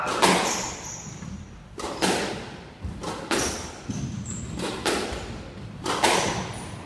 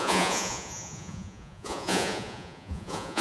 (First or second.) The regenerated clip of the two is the second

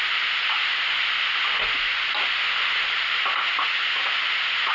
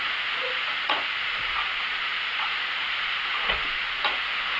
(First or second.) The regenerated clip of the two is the second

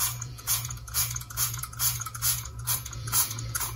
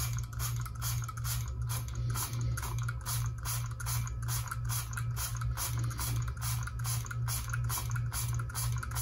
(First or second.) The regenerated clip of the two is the first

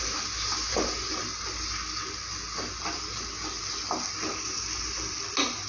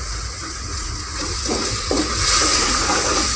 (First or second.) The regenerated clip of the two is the second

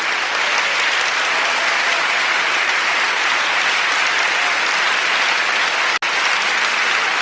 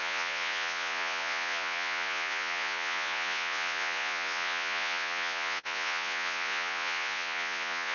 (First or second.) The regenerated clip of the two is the second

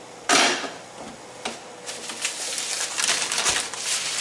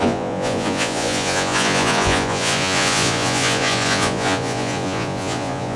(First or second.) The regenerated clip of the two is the second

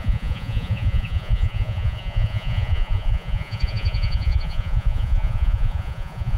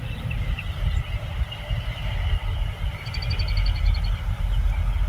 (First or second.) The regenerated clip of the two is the first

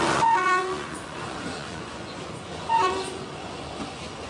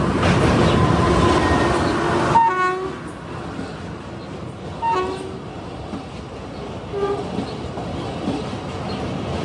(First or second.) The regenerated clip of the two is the first